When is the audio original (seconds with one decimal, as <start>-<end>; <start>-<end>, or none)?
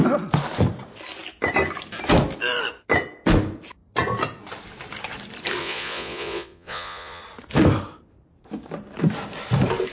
0.0-5.6; 7.2-9.9